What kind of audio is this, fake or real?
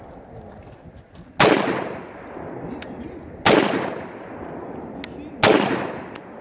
real